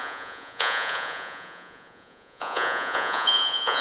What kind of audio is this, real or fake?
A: fake